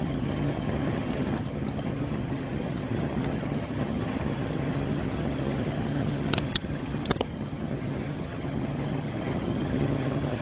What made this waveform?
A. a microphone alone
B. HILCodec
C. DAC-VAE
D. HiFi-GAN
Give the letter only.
D